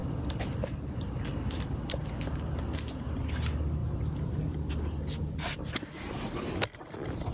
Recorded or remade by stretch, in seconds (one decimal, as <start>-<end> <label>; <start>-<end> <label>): 0.0-3.8 recorded; 3.8-4.7 remade; 4.7-7.3 recorded